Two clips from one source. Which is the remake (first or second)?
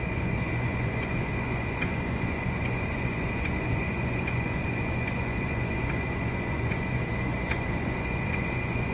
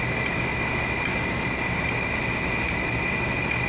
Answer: first